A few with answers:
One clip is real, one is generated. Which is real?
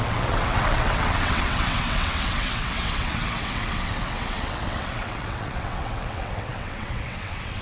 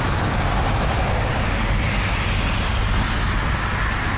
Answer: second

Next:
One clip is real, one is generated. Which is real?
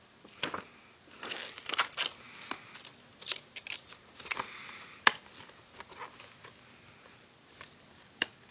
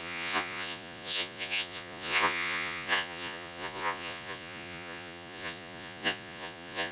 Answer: first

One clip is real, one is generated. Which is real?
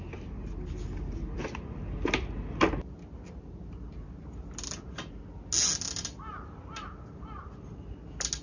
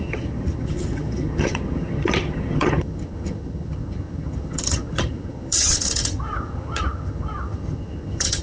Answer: first